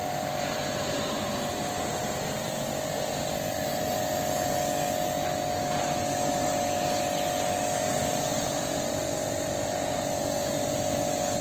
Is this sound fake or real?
real